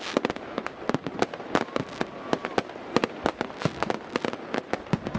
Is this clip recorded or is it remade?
recorded